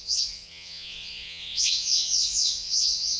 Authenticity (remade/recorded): remade